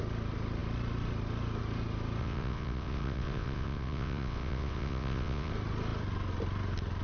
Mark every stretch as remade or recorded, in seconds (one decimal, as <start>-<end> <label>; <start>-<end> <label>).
0.0-2.2 recorded; 2.2-5.5 remade; 5.5-7.0 recorded

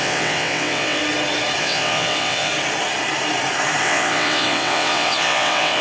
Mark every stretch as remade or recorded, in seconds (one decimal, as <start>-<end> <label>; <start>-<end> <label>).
0.0-1.0 remade; 1.0-1.6 recorded; 1.6-2.5 remade; 2.5-3.8 recorded; 3.8-5.8 remade

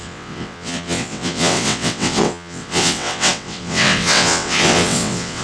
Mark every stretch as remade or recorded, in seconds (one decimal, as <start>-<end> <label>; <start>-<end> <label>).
0.0-5.4 remade

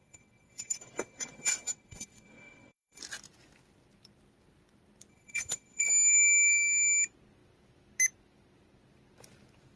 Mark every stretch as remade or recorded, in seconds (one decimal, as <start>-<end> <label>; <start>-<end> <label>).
0.0-3.0 remade; 3.0-5.1 recorded; 5.1-5.9 remade; 5.9-9.8 recorded

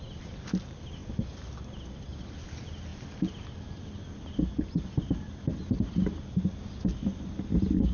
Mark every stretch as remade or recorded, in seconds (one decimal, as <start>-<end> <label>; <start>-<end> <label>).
0.0-7.9 recorded

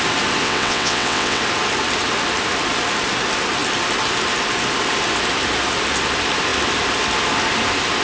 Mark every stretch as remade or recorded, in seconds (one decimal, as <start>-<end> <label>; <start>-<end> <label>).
0.0-0.4 recorded; 0.4-1.4 remade; 1.4-8.0 recorded

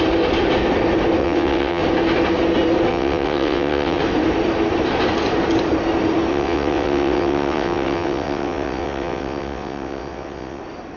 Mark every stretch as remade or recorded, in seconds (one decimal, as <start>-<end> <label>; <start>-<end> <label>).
0.0-1.2 recorded; 1.2-1.8 remade; 1.8-2.9 recorded; 2.9-4.0 remade; 4.0-6.3 recorded; 6.3-10.6 remade; 10.6-11.0 recorded

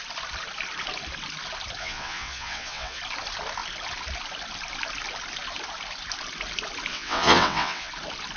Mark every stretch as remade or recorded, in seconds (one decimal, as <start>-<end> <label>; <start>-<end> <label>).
0.0-1.8 recorded; 1.8-3.0 remade; 3.0-6.9 recorded; 6.9-7.9 remade; 7.9-8.4 recorded